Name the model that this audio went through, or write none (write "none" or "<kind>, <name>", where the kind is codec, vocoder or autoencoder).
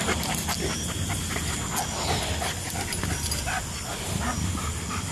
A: none